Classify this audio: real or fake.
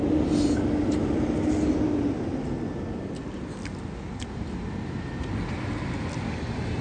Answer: real